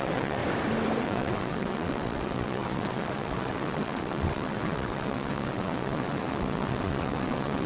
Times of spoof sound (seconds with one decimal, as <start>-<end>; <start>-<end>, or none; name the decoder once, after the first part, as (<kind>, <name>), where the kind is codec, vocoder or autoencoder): 0.0-0.4 (vocoder, WaveNeXt); 1.0-7.7